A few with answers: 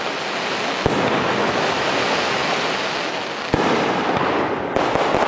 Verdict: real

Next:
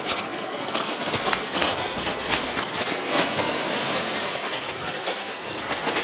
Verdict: fake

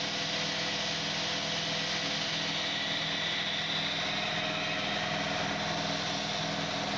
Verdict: real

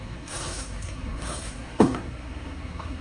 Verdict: fake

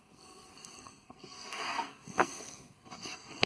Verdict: fake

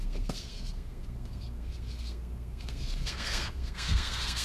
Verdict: fake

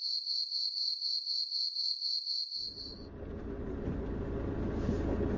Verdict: real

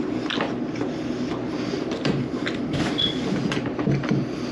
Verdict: real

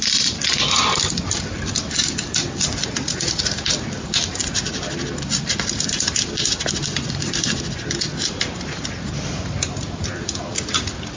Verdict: real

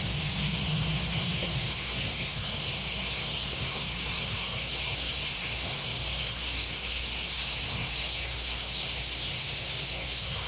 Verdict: fake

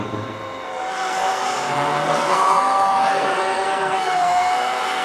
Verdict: fake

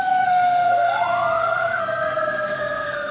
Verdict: fake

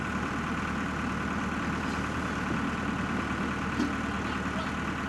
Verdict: real